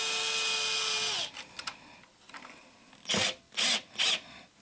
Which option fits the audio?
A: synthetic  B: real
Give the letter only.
B